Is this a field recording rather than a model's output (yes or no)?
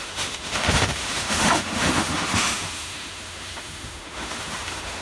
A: no